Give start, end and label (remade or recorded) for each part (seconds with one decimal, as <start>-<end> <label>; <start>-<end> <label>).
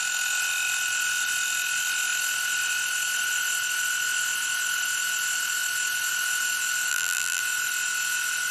0.0-6.9 recorded; 6.9-7.4 remade; 7.4-8.5 recorded